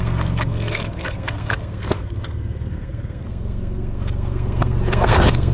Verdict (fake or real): fake